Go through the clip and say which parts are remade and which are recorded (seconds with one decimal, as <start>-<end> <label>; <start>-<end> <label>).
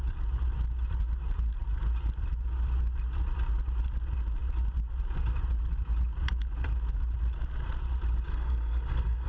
0.0-8.3 recorded; 8.3-9.3 remade